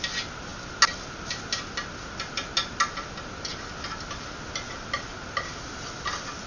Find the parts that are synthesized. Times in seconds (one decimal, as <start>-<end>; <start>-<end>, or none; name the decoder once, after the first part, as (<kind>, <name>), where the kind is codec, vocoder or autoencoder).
none